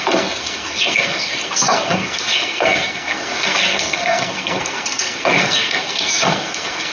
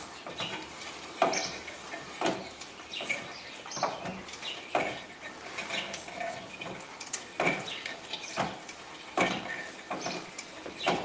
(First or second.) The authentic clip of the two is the second